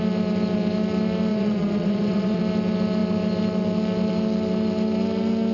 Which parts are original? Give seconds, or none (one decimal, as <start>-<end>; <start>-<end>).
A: 0.0-1.3; 2.4-5.5